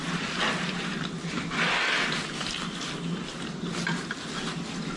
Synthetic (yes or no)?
no